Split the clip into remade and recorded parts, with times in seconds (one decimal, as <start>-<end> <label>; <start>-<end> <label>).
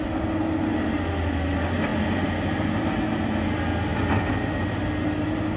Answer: 0.0-5.6 recorded